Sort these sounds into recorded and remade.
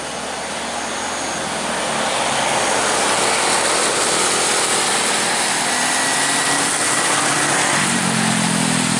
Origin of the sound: recorded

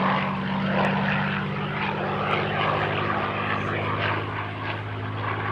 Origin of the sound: recorded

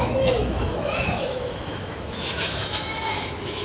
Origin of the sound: remade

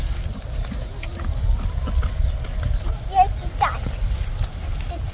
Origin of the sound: recorded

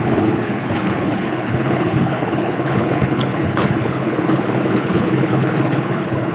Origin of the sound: remade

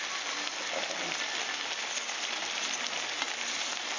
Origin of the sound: recorded